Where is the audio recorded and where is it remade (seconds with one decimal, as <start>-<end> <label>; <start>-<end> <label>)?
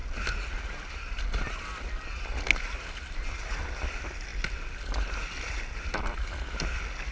0.0-7.1 recorded